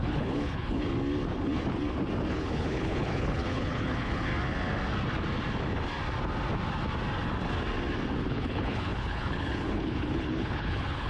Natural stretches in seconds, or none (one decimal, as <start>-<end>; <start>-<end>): 0.8-2.3; 4.3-8.3